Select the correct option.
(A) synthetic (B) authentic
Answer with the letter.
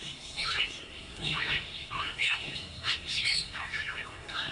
A